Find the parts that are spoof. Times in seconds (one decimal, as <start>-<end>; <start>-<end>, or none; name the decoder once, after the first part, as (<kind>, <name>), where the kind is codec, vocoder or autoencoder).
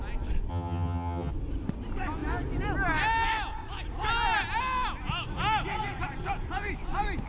0.5-1.3 (vocoder, HiFi-GAN)